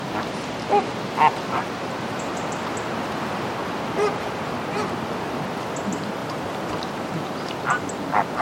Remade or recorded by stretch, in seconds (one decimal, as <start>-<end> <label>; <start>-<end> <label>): 0.0-6.2 recorded; 6.2-7.1 remade; 7.1-8.4 recorded